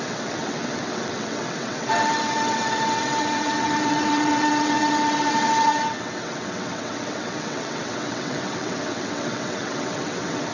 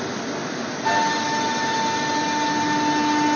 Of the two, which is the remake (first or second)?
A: first